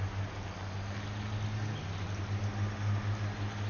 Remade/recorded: recorded